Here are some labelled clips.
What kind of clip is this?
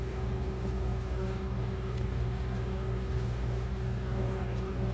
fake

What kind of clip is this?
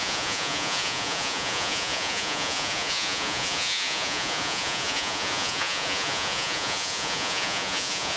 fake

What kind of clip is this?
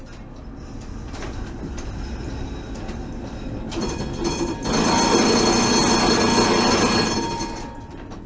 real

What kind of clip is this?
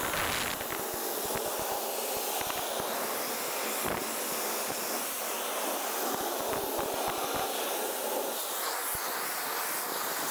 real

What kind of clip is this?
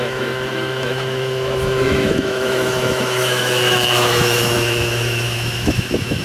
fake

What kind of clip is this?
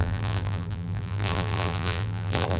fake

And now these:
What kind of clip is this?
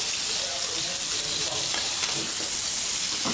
real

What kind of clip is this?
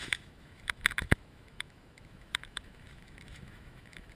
fake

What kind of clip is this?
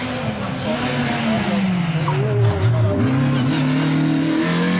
real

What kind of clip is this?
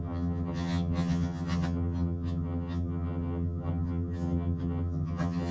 fake